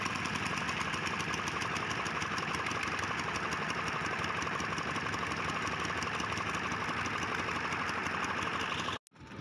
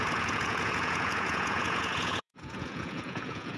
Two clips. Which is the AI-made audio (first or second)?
second